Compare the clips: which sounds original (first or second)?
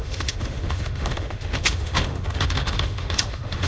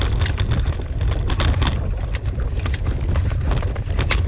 second